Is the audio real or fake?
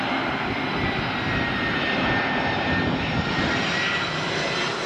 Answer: real